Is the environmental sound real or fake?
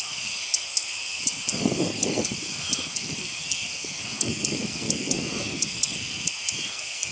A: fake